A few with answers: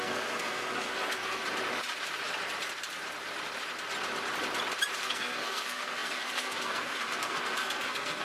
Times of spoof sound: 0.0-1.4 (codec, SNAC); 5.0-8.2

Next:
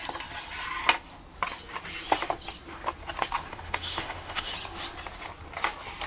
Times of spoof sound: 3.5-4.5 (autoencoder, DAC-VAE)

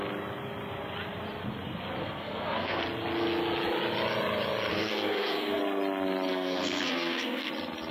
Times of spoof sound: 2.0-2.8 (codec, SNAC); 4.7-5.6; 6.3-7.5

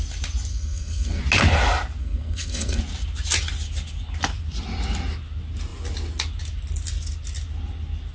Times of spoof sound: 0.5-1.2 (codec, SNAC); 2.0-2.8

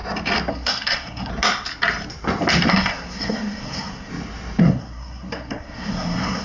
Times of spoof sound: 0.5-1.3 (codec, SNAC); 2.7-4.1; 4.6-6.4

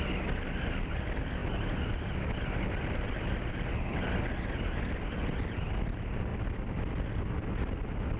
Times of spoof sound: none

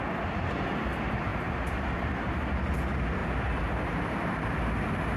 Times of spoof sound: 1.3-2.3 (vocoder, BigVGAN v2)